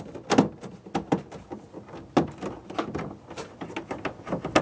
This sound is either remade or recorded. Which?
recorded